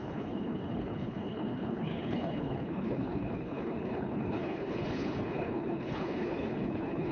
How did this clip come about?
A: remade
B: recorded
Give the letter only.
A